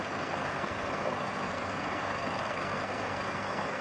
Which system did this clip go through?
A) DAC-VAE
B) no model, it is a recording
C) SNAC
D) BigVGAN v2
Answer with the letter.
C